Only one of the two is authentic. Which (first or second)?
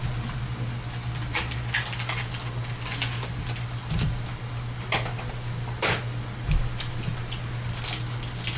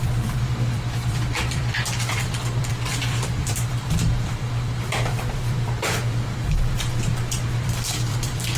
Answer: first